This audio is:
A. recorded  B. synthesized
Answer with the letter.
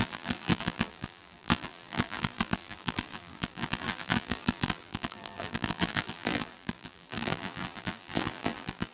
B